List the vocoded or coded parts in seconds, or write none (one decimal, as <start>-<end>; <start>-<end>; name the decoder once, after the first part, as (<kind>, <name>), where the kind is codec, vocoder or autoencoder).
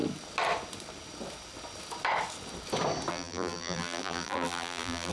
3.1-5.1 (vocoder, BigVGAN v2)